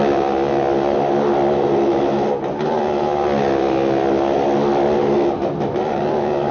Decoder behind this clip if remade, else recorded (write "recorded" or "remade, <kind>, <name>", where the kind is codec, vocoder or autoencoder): recorded